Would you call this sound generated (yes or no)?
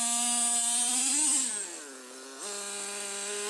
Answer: no